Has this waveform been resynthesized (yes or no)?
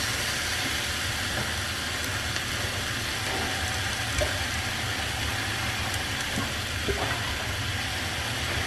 no